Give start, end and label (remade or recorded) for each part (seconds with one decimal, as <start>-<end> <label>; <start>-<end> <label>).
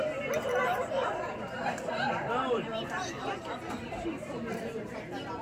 0.0-2.7 recorded; 2.7-5.0 remade; 5.0-5.4 recorded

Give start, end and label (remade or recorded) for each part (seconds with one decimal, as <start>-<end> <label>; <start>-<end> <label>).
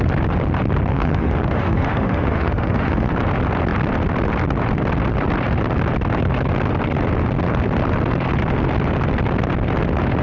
0.0-0.9 recorded; 0.9-3.1 remade; 3.1-10.2 recorded